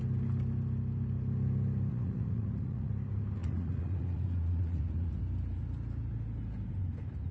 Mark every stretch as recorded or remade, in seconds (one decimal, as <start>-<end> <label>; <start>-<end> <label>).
0.0-1.9 recorded; 1.9-2.9 remade; 2.9-3.4 recorded; 3.4-5.2 remade; 5.2-7.3 recorded